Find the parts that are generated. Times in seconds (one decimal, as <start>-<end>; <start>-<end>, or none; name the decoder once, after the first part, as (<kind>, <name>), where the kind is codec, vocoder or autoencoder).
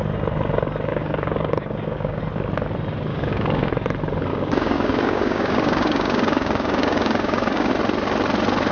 0.9-2.2 (codec, DAC); 3.1-3.7; 4.3-7.7